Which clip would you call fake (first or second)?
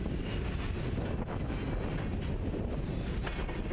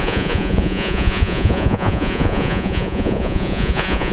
second